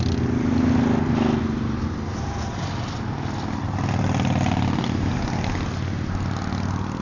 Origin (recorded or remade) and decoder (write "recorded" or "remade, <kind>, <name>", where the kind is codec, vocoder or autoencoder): recorded